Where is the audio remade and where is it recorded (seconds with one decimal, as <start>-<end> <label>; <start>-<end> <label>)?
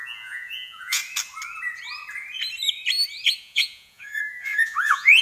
0.0-1.0 remade; 1.0-3.4 recorded; 3.4-5.2 remade